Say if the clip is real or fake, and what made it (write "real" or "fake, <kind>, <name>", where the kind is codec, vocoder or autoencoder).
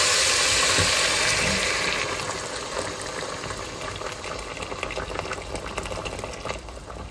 real